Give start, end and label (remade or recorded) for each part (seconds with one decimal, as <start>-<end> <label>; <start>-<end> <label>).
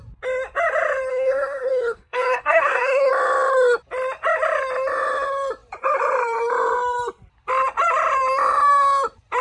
0.0-1.1 recorded; 1.1-3.1 remade; 3.1-9.4 recorded